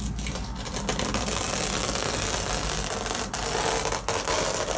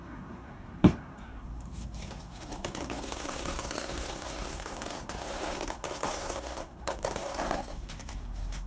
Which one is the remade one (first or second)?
second